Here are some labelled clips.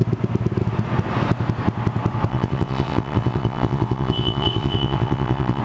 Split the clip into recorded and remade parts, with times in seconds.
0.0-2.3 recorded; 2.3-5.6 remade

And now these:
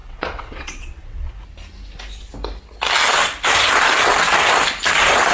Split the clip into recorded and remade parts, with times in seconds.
0.0-1.3 remade; 1.3-5.3 recorded

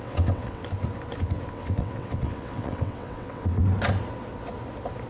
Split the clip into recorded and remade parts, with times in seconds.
0.0-0.6 remade; 0.6-1.5 recorded; 1.5-3.6 remade; 3.6-5.1 recorded

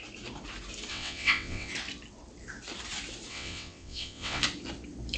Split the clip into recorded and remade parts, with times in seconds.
0.0-0.9 recorded; 0.9-1.7 remade; 1.7-3.3 recorded; 3.3-4.4 remade; 4.4-5.2 recorded

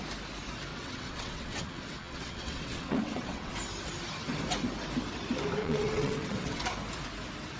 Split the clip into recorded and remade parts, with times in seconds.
0.0-0.7 recorded; 0.7-3.5 remade; 3.5-5.6 recorded; 5.6-6.6 remade; 6.6-7.6 recorded